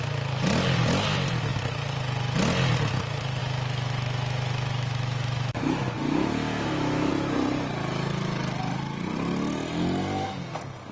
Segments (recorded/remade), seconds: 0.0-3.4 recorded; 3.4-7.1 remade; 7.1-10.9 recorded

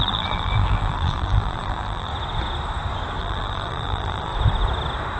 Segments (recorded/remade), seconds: 0.0-2.1 remade; 2.1-3.2 recorded; 3.2-4.3 remade; 4.3-5.2 recorded